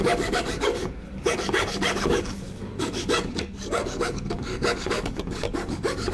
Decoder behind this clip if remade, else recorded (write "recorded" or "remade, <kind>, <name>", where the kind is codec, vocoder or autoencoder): remade, codec, DAC